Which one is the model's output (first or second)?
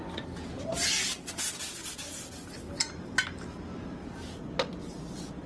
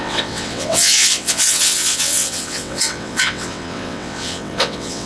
second